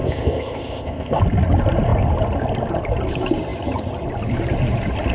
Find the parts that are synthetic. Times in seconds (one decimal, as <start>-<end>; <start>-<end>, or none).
0.0-1.2